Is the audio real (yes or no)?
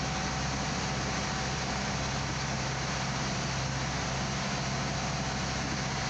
yes